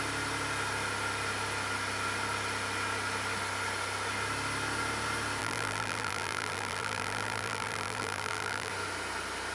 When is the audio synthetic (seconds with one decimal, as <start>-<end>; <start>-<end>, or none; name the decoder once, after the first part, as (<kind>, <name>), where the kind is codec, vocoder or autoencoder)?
5.4-8.7 (vocoder, BigVGAN v2)